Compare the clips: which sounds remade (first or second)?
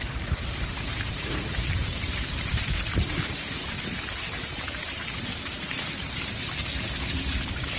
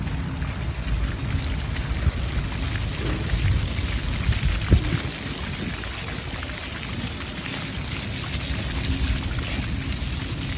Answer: first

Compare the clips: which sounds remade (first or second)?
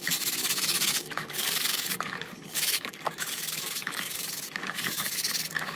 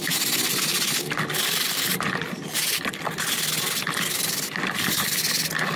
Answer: first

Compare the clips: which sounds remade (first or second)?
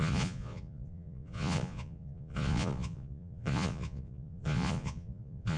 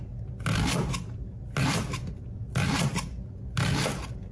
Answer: first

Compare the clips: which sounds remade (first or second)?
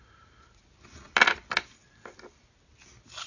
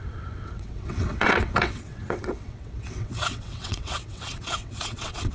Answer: second